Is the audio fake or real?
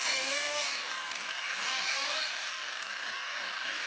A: fake